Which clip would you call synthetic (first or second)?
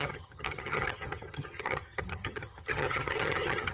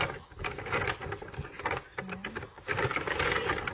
first